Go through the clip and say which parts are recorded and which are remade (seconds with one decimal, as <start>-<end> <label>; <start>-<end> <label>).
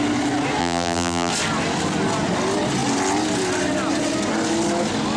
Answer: 0.0-0.6 recorded; 0.6-1.3 remade; 1.3-5.2 recorded